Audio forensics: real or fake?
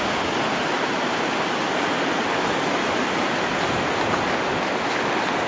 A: real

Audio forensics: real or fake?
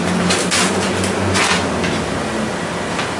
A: real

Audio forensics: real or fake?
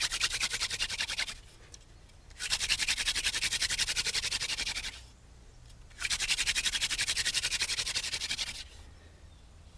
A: real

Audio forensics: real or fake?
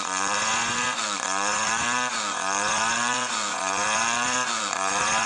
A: fake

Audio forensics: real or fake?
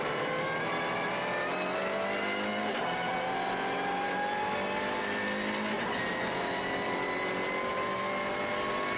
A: real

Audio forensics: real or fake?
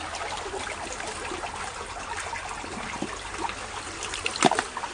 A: real